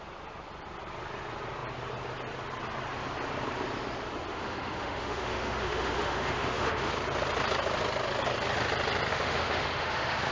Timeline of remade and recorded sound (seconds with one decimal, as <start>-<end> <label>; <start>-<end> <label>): 0.0-4.3 recorded; 4.3-6.9 remade; 6.9-9.1 recorded; 9.1-10.3 remade